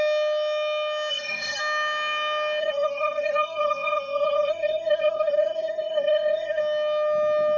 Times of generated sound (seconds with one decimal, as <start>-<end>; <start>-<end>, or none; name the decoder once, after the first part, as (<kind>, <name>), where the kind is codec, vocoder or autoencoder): 1.1-1.6 (codec, SNAC); 2.6-6.6